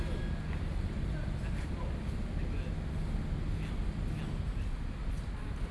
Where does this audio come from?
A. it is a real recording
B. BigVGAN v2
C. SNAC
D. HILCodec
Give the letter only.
A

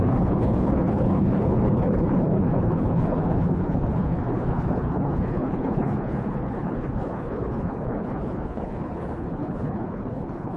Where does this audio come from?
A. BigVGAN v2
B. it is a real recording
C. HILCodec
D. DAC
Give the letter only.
C